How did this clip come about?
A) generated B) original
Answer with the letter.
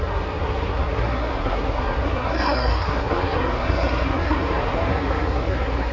A